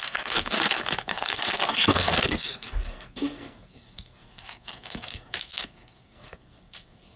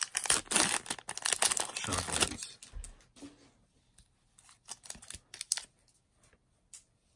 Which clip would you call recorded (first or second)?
second